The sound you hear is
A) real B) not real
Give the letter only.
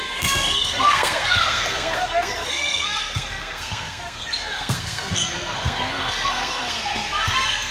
B